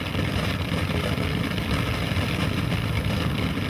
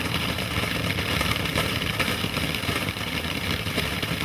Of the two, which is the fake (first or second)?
second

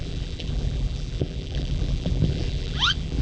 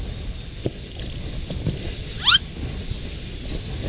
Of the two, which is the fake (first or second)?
first